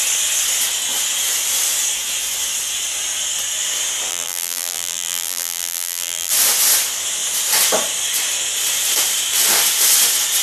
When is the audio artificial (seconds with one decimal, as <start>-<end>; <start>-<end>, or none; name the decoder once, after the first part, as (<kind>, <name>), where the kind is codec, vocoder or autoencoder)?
4.1-6.3 (vocoder, BigVGAN v2)